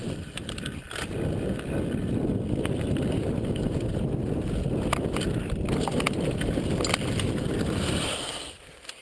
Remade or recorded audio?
recorded